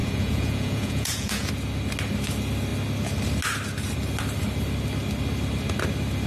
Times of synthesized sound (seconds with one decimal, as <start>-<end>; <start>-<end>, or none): 0.0-1.5